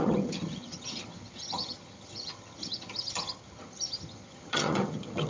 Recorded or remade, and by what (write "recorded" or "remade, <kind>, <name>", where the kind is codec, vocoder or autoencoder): remade, vocoder, HiFi-GAN